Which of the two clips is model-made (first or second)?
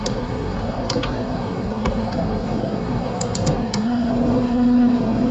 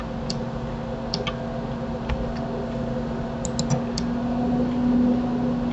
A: first